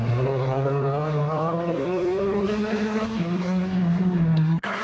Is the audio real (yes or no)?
no